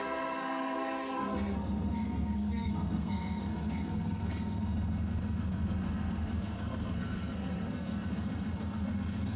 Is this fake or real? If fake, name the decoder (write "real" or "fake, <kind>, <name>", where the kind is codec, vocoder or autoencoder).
fake, codec, SNAC